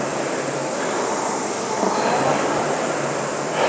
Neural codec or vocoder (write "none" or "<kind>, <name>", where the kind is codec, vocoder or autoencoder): none